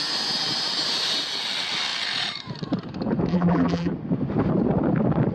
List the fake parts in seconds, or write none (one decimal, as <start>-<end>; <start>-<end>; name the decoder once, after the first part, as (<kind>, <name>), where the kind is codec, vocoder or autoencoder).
3.3-3.9 (vocoder, BigVGAN v2)

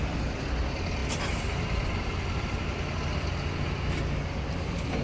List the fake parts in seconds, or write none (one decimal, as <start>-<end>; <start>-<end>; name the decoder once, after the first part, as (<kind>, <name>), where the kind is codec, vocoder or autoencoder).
none